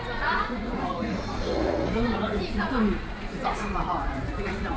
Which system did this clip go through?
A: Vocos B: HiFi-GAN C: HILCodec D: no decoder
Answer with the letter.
A